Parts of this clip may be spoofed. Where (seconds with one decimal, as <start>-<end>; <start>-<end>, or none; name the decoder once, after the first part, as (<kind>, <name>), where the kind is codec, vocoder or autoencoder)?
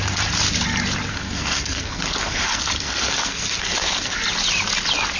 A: 1.1-4.2 (codec, SNAC)